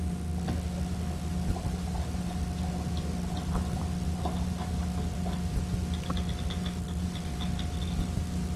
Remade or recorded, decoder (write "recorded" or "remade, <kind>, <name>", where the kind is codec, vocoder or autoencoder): recorded